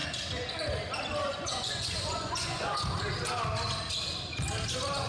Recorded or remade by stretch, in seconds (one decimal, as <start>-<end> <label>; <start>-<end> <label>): 0.0-1.2 recorded; 1.2-3.0 remade; 3.0-5.1 recorded